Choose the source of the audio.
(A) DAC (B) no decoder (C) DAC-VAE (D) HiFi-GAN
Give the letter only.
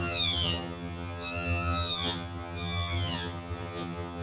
D